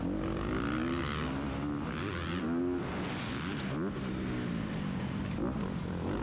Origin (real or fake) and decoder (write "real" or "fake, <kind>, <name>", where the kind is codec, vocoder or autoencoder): real